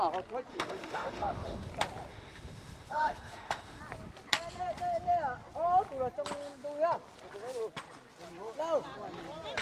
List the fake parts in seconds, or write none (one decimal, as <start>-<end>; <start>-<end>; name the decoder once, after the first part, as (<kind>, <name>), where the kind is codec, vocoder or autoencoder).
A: 0.5-1.7 (autoencoder, DAC-VAE); 2.1-3.8